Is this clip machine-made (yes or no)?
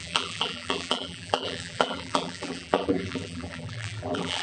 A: yes